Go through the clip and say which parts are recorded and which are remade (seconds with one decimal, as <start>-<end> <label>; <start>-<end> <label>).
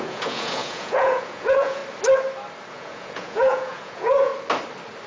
0.0-1.8 remade; 1.8-2.7 recorded; 2.7-4.3 remade; 4.3-5.1 recorded